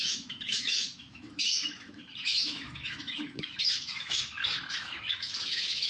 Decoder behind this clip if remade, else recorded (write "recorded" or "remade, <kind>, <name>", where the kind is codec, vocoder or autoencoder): remade, autoencoder, DAC-VAE